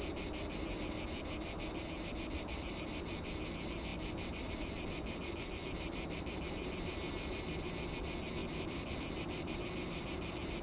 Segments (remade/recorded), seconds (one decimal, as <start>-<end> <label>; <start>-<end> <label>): 0.0-3.9 recorded; 3.9-4.5 remade; 4.5-8.4 recorded; 8.4-9.6 remade; 9.6-10.6 recorded